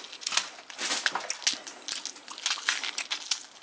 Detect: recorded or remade recorded